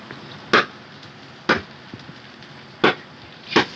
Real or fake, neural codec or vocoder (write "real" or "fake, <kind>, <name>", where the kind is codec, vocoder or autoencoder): real